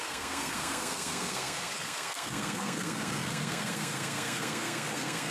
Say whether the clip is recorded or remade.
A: remade